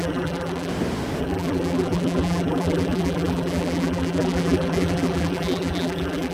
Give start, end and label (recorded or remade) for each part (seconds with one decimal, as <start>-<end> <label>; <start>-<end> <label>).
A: 0.0-0.7 remade; 0.7-1.2 recorded; 1.2-6.3 remade